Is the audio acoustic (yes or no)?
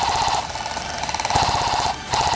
yes